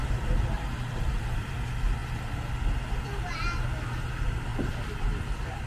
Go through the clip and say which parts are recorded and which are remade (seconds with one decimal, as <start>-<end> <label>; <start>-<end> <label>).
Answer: 0.0-1.5 remade; 1.5-5.7 recorded